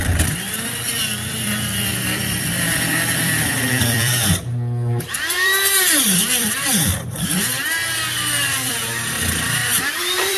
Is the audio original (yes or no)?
no